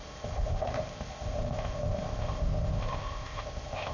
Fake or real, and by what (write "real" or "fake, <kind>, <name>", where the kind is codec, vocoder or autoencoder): fake, codec, ZipCodec